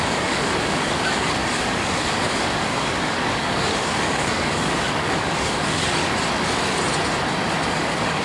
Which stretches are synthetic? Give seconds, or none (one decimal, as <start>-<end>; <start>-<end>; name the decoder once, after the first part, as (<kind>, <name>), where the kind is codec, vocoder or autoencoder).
0.0-6.1 (codec, DAC); 7.7-8.2